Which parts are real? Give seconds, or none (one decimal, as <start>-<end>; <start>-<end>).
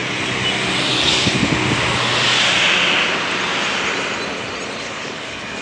0.0-0.9; 1.4-4.8